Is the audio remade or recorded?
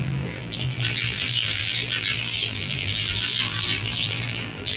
remade